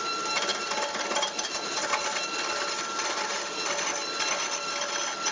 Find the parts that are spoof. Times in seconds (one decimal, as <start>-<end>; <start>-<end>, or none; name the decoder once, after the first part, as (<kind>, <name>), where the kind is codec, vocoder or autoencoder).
none